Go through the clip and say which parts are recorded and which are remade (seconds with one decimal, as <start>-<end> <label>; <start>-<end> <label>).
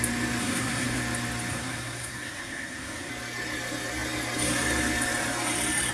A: 0.0-0.4 recorded; 0.4-1.0 remade; 1.0-1.5 recorded; 1.5-3.1 remade; 3.1-5.9 recorded